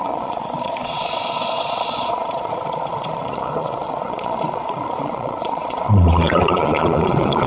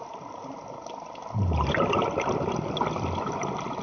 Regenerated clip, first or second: first